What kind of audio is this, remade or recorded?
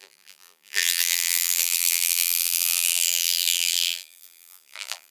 remade